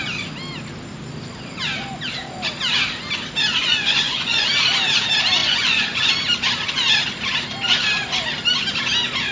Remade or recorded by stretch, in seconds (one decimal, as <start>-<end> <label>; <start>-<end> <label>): 0.0-3.6 recorded; 3.6-4.5 remade; 4.5-5.4 recorded; 5.4-6.1 remade; 6.1-9.3 recorded